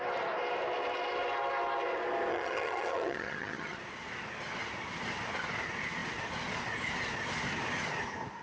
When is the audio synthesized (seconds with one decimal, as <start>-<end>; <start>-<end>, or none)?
2.3-3.8